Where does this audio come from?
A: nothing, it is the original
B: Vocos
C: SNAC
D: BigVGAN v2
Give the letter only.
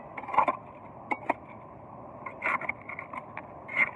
A